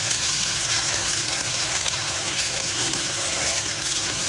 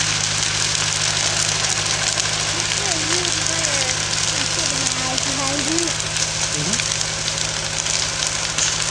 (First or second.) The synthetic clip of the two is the first